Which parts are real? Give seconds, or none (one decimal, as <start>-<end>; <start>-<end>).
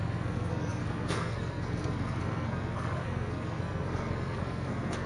none